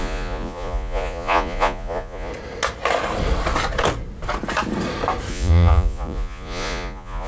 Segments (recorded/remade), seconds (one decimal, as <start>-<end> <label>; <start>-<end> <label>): 0.0-2.3 remade; 2.3-5.3 recorded; 5.3-7.3 remade